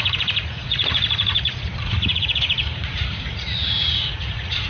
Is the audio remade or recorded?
remade